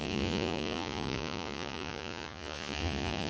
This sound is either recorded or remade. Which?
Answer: remade